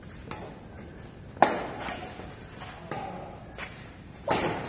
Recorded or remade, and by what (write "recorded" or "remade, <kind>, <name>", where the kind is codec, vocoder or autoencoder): recorded